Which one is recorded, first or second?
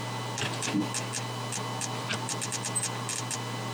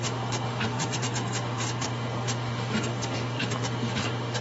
first